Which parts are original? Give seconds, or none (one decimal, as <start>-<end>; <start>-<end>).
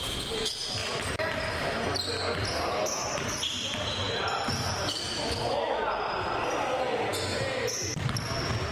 0.0-0.8; 5.9-8.7